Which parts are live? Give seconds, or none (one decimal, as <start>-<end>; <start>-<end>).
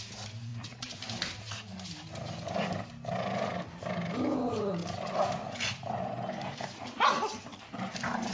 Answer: 0.0-8.3